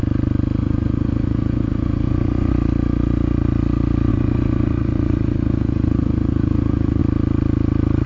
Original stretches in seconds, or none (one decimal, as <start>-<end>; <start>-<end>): 0.0-0.6; 2.5-4.1; 7.0-8.1